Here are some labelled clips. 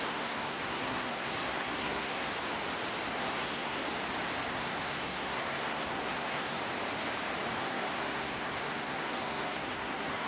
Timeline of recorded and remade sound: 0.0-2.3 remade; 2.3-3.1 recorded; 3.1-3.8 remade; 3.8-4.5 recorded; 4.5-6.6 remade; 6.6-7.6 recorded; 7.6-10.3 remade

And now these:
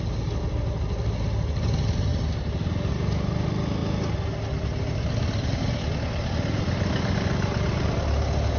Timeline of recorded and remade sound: 0.0-8.6 recorded